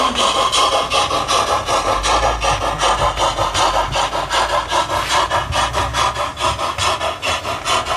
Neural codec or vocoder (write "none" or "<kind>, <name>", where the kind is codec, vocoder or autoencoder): none